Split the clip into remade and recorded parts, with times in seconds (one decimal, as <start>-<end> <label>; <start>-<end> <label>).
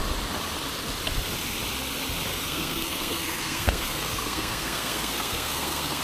0.0-2.3 recorded; 2.3-6.0 remade